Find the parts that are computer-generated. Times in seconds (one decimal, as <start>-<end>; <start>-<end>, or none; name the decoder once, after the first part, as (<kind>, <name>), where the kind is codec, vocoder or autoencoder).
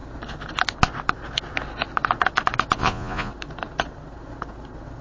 2.8-3.3 (vocoder, Vocos)